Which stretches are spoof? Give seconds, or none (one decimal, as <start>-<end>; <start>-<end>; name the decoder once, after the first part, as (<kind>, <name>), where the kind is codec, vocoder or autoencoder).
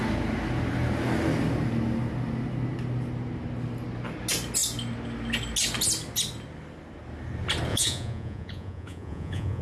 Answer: 7.7-9.6 (vocoder, Vocos)